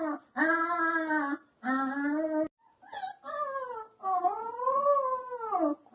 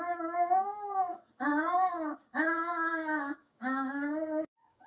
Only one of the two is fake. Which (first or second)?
second